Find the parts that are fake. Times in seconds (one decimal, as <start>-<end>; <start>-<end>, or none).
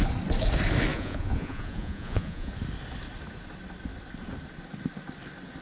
0.9-2.5